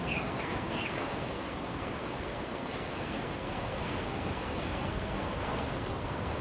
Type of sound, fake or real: fake